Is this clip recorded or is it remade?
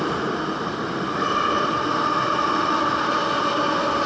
recorded